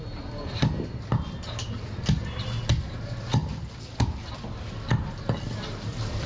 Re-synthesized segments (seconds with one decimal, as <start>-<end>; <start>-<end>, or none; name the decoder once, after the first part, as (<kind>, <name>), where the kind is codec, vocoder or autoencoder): none